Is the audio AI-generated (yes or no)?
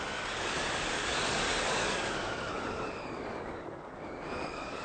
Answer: yes